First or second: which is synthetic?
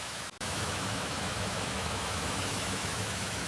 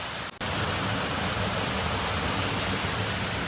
first